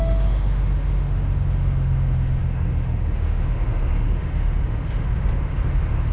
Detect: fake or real fake